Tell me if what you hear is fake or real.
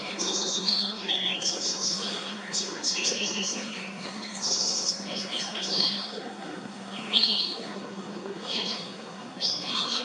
fake